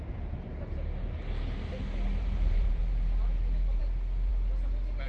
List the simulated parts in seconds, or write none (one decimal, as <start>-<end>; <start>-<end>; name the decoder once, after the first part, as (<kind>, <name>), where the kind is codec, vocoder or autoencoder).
2.2-2.8 (vocoder, BigVGAN v2)